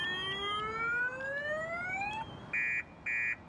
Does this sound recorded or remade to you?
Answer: recorded